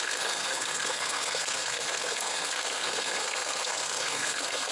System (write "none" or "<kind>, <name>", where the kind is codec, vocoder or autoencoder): codec, SNAC